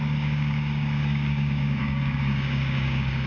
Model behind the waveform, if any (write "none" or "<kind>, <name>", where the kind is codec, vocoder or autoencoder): codec, DAC